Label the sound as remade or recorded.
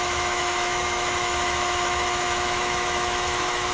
remade